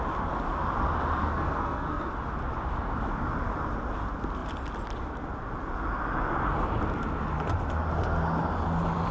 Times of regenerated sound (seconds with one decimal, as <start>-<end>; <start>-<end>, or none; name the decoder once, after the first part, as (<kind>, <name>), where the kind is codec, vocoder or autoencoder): 1.2-2.1 (codec, SNAC)